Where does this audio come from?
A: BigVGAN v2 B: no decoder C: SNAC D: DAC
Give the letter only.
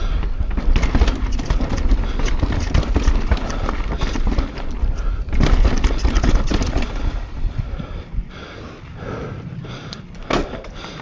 B